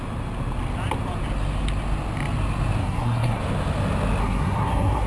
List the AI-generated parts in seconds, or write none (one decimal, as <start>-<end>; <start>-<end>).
2.8-3.4; 4.2-5.1

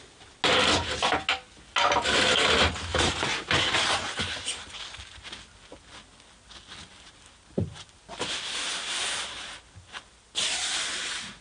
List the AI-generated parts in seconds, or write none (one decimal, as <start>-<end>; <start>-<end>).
none

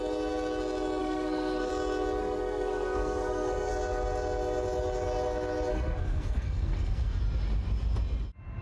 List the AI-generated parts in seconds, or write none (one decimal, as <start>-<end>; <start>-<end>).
1.0-1.7; 2.2-3.7; 5.7-7.2

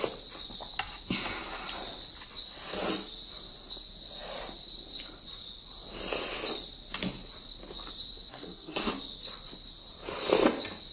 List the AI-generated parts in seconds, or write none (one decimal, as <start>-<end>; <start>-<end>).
8.3-8.9